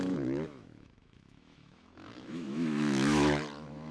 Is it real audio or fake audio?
fake